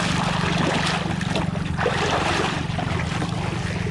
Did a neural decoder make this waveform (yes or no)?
no